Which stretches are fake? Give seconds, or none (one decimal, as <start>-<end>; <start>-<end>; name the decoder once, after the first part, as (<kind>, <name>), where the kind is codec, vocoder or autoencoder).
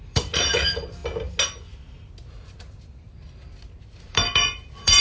0.0-1.0 (vocoder, BigVGAN v2); 4.0-5.0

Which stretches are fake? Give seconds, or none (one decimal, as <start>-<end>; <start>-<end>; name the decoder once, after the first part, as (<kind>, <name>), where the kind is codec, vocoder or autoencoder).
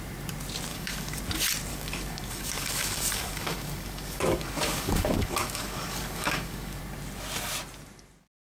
0.7-1.2 (codec, DAC); 1.7-6.8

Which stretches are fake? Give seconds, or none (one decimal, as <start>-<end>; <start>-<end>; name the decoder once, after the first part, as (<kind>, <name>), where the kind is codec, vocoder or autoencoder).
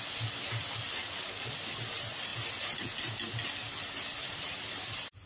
1.0-1.5 (codec, DAC)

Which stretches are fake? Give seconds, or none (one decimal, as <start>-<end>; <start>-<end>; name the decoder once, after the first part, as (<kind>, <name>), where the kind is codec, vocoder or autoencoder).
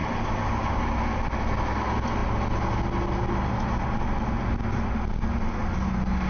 none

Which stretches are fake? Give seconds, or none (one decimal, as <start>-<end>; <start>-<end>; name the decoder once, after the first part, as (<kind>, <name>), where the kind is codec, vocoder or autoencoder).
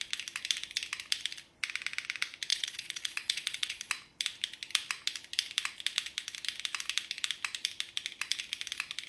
2.5-3.9 (vocoder, Vocos)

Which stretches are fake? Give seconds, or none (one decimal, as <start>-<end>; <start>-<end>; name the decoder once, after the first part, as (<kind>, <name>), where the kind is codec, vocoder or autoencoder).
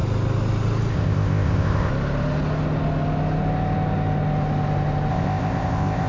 0.9-1.9 (codec, ZipCodec); 5.1-6.1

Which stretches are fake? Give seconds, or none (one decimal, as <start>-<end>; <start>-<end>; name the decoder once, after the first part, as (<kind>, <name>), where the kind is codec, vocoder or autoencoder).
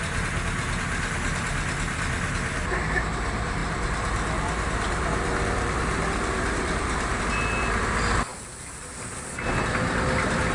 3.6-7.2 (vocoder, BigVGAN v2); 8.3-9.3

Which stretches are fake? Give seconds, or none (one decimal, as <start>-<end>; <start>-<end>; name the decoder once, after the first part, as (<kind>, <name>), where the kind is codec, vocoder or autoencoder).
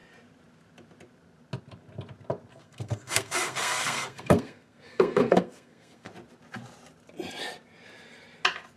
2.5-6.1 (codec, SNAC)